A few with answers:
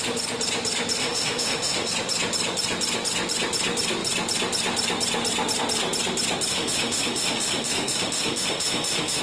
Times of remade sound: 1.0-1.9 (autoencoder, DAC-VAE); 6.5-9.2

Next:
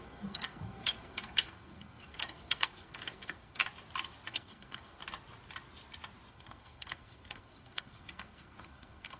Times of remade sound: 0.0-3.6 (codec, SNAC); 4.3-5.0; 6.3-9.2

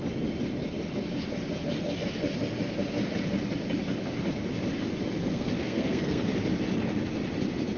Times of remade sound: 5.2-6.2 (codec, SNAC)

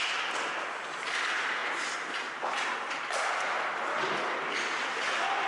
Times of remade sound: none

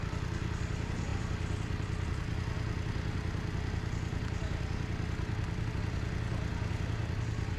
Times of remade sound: none

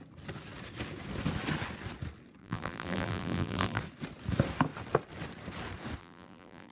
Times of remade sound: 2.4-3.8 (vocoder, BigVGAN v2); 6.0-6.7

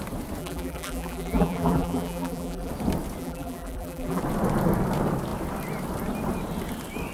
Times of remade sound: 0.4-2.7 (vocoder, BigVGAN v2); 3.2-4.2

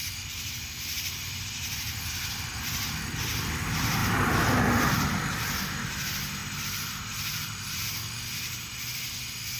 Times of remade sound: 6.4-7.6 (vocoder, BigVGAN v2)